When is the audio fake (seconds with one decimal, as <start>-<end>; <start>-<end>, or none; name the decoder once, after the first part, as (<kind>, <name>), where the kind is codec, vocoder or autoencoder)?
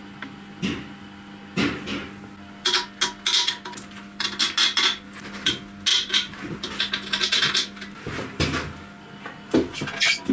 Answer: none